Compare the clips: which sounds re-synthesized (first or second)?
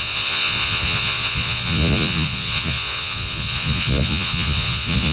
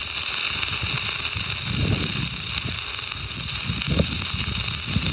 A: first